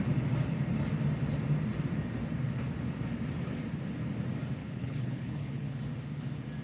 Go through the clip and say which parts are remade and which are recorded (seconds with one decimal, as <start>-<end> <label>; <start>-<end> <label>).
0.0-4.6 recorded; 4.6-5.8 remade; 5.8-6.6 recorded